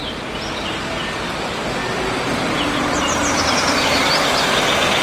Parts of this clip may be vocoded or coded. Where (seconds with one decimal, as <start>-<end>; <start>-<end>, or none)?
1.4-5.0